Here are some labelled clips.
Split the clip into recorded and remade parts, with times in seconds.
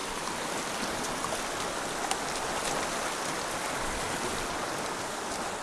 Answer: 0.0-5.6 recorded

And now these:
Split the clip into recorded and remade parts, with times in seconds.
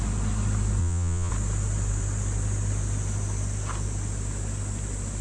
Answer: 0.0-0.8 recorded; 0.8-1.3 remade; 1.3-5.2 recorded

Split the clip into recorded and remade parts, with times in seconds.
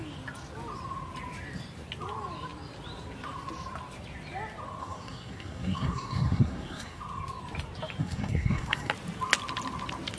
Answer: 0.0-4.8 recorded; 4.8-7.0 remade; 7.0-8.0 recorded; 8.0-8.9 remade; 8.9-10.2 recorded